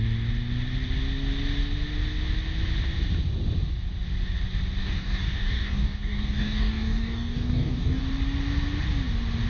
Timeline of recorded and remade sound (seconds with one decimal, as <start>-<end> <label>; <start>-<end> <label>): 0.0-4.8 recorded; 4.8-8.0 remade; 8.0-9.5 recorded